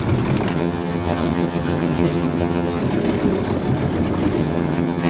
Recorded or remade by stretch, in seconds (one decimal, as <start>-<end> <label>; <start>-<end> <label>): 0.0-0.5 recorded; 0.5-2.8 remade; 2.8-4.4 recorded; 4.4-5.1 remade